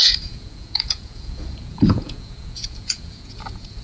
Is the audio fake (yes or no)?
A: yes